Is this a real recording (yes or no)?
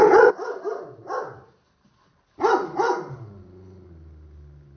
yes